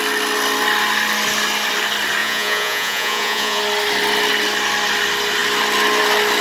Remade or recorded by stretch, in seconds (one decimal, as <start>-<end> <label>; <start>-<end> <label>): 0.0-2.2 recorded; 2.2-3.6 remade; 3.6-6.4 recorded